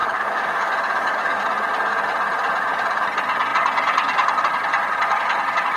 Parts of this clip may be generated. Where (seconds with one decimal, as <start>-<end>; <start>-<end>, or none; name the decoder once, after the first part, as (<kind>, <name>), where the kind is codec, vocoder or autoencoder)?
0.0-1.4 (codec, DAC)